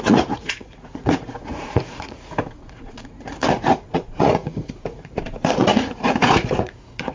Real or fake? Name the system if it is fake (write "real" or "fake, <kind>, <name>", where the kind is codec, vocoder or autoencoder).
fake, vocoder, Vocos